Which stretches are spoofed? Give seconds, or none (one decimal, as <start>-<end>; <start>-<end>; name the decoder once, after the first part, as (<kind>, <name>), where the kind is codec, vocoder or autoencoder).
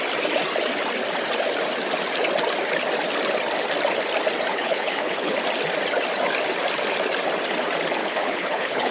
4.5-5.4 (codec, HILCodec); 8.0-8.9